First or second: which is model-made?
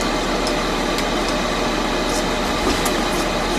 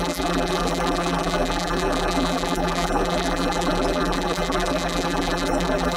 second